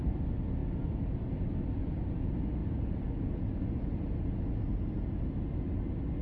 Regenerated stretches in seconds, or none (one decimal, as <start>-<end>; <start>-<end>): none

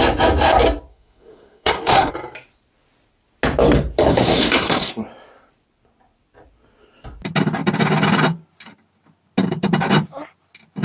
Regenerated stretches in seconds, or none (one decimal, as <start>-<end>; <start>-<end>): 0.9-2.1; 4.0-4.9